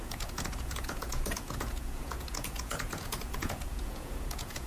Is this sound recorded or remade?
remade